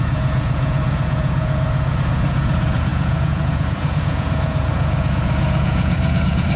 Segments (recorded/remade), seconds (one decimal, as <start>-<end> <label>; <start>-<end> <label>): 0.0-6.6 remade